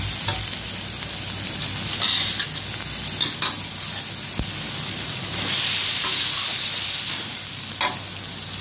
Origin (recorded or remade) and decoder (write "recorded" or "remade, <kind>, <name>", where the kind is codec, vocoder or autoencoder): recorded